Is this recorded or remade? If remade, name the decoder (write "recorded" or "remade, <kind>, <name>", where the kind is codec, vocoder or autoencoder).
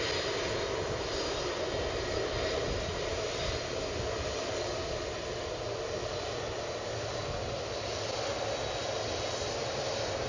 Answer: recorded